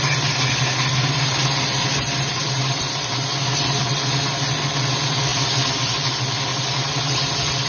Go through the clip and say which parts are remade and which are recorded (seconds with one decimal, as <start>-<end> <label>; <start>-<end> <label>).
0.0-7.7 recorded